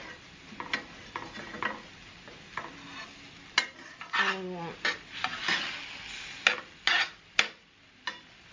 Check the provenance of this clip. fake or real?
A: real